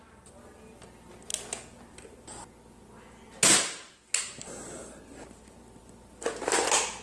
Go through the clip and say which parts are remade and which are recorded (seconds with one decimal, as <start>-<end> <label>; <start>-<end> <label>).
0.0-7.0 recorded